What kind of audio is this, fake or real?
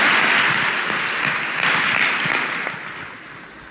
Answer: real